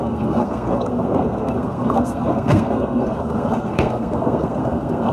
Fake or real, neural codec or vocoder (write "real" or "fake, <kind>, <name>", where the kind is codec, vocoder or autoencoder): fake, codec, SNAC